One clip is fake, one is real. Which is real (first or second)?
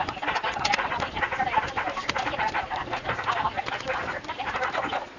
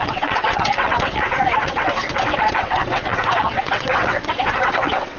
first